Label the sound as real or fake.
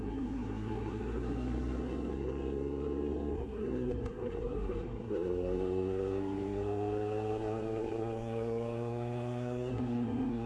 fake